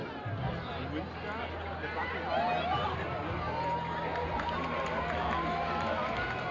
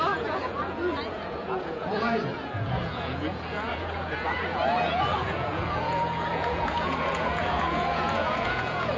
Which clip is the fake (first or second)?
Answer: second